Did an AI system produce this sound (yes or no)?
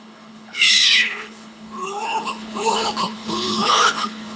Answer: yes